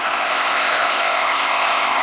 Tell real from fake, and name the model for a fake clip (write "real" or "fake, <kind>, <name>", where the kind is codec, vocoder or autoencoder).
fake, codec, ZipCodec